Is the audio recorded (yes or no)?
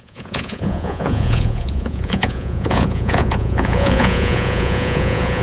no